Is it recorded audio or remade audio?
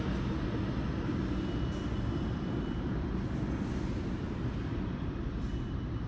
recorded